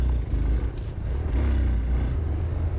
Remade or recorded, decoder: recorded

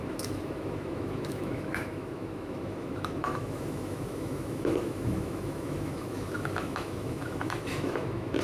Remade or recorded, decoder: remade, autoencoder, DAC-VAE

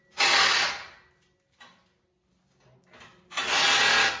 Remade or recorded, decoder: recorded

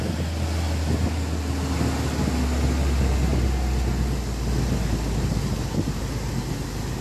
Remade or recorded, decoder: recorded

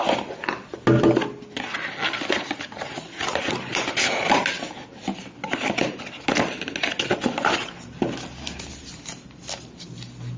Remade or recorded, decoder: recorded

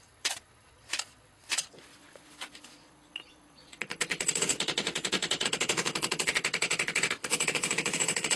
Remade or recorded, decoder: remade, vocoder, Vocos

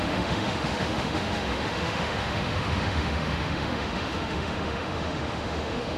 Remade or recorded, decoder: remade, autoencoder, DAC-VAE